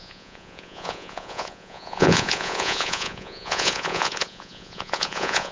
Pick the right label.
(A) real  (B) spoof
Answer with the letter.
B